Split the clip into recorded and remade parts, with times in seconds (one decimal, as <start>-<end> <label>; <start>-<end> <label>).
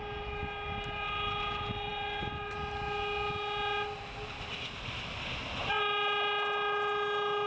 0.0-7.5 recorded